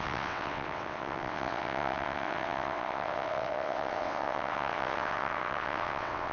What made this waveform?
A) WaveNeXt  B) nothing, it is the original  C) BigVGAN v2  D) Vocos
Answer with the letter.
A